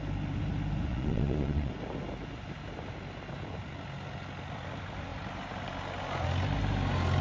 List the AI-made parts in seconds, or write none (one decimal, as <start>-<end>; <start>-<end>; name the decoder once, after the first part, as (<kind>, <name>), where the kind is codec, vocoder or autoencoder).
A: 0.9-1.7 (vocoder, Vocos)